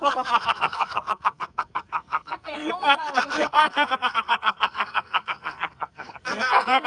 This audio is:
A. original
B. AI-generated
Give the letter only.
B